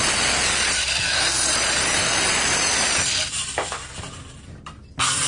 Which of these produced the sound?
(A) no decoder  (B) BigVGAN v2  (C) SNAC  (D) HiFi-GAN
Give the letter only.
A